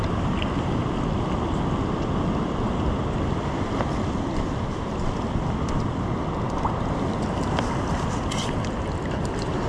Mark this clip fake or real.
real